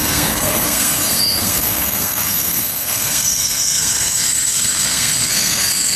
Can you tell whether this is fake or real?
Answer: fake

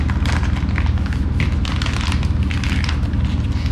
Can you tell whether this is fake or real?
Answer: real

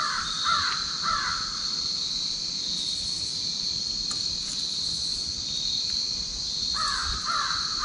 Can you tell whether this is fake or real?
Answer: real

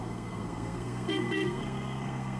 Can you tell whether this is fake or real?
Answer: fake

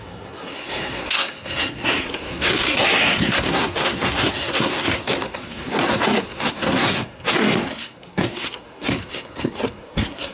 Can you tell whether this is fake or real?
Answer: fake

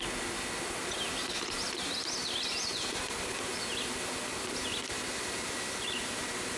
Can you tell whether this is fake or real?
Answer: real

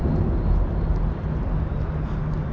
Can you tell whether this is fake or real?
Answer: real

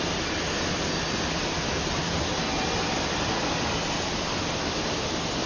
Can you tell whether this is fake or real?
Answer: real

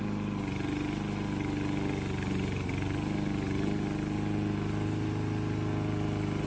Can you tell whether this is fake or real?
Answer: real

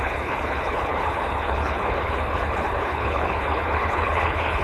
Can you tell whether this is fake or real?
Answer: fake